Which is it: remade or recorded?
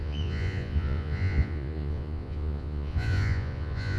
remade